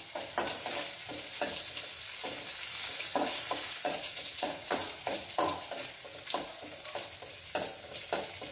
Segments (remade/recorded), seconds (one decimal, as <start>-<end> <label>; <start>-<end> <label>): 0.0-2.9 recorded; 2.9-5.6 remade; 5.6-8.5 recorded

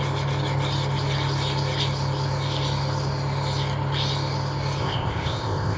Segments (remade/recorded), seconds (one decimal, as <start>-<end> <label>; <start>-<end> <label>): 0.0-4.8 recorded; 4.8-5.8 remade

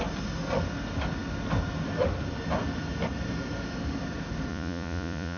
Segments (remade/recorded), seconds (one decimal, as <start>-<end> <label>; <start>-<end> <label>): 0.0-4.5 recorded; 4.5-5.4 remade

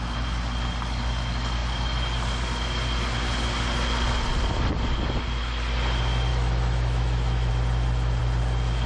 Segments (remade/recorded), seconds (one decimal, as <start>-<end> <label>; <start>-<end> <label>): 0.0-6.3 recorded; 6.3-7.5 remade; 7.5-8.9 recorded